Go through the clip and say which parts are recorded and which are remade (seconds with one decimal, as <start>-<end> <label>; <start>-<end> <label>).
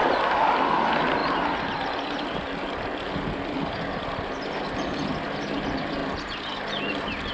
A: 0.0-7.3 recorded